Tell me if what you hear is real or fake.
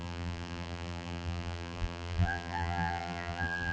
fake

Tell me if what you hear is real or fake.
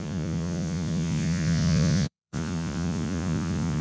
fake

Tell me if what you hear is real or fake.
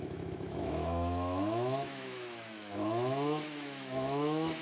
fake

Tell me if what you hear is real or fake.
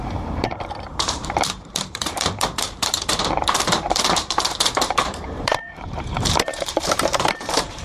fake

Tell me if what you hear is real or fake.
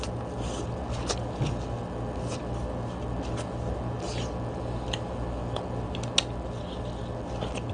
real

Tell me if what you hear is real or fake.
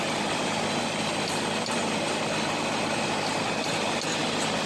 real